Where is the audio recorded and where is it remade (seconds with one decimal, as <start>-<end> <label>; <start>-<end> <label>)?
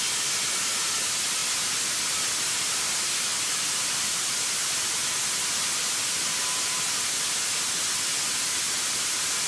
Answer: 0.0-9.5 recorded